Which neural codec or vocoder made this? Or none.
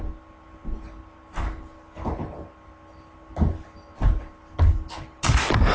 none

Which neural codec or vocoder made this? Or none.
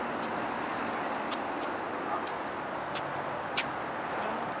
none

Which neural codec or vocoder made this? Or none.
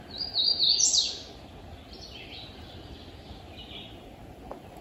none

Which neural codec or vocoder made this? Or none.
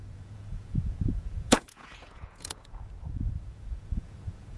vocoder, Vocos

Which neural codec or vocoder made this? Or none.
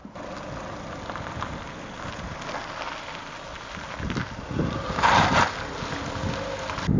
none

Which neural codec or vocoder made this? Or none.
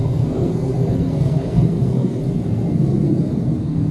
codec, SNAC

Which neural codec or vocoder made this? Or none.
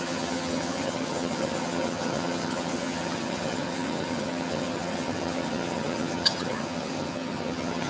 vocoder, HiFi-GAN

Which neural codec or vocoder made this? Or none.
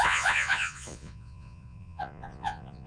vocoder, Vocos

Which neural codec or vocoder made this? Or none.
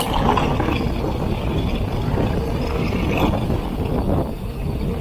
none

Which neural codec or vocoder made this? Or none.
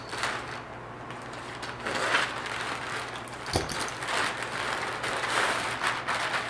none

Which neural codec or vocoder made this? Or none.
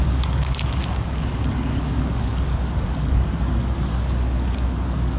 codec, DAC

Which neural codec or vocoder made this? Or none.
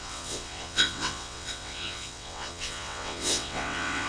vocoder, WaveNeXt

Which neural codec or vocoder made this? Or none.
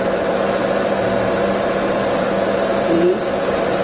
vocoder, BigVGAN v2